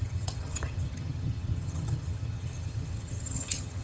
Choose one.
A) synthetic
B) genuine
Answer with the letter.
A